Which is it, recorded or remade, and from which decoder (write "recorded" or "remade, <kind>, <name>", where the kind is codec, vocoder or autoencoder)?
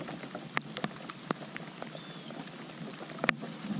recorded